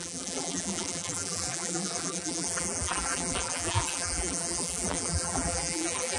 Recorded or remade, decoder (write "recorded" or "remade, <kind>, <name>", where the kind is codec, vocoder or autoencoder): remade, vocoder, BigVGAN v2